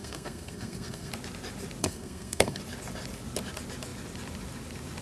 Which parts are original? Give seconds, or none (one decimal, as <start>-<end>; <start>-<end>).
1.1-1.8; 2.6-5.0